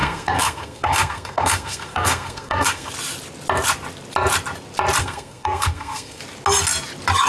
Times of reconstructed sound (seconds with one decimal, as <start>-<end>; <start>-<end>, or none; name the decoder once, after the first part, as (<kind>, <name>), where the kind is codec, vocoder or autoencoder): 0.0-2.9 (codec, SNAC); 5.0-6.2